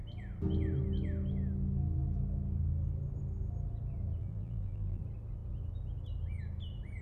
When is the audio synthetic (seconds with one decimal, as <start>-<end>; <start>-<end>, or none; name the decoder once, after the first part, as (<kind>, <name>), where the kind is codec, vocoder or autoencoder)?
4.2-5.0 (vocoder, BigVGAN v2)